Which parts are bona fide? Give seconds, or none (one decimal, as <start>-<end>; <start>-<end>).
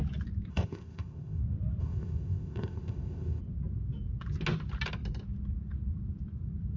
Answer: 0.0-0.5; 1.4-1.8; 3.4-6.8